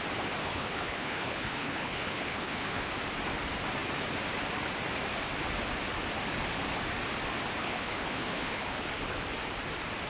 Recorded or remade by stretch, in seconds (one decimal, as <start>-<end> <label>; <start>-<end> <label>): 0.0-0.4 recorded; 0.4-2.9 remade; 2.9-7.6 recorded; 7.6-8.9 remade; 8.9-10.1 recorded